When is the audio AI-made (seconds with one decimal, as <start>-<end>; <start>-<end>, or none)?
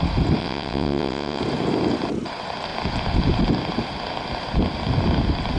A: 0.4-1.4